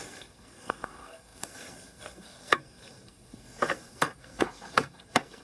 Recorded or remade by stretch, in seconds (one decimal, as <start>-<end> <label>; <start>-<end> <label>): 0.0-5.4 remade